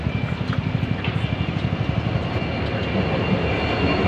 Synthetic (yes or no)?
no